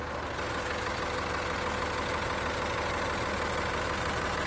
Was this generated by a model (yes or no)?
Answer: no